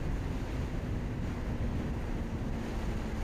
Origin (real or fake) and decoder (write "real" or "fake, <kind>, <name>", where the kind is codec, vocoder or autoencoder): real